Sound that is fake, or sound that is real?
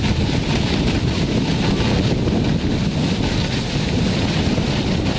real